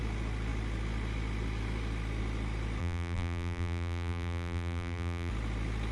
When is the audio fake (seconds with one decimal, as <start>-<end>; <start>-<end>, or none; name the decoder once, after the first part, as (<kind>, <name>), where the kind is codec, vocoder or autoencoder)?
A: 2.8-5.3 (vocoder, BigVGAN v2)